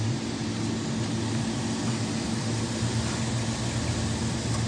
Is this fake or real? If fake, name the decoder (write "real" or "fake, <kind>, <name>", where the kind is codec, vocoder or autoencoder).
real